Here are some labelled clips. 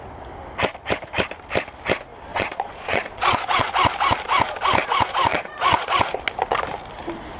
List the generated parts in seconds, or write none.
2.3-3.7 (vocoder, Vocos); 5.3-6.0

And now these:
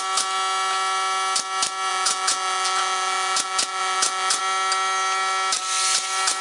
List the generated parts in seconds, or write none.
1.9-4.4 (vocoder, Vocos)

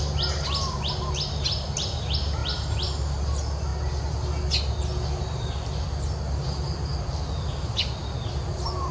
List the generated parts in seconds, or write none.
none

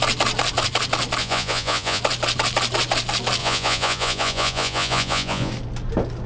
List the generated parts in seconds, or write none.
1.2-2.0 (vocoder, Vocos); 3.4-5.5

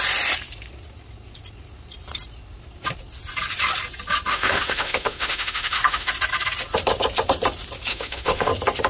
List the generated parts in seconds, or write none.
4.3-6.1 (autoencoder, DAC-VAE); 7.9-8.5

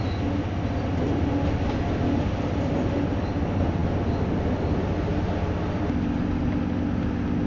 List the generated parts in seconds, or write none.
none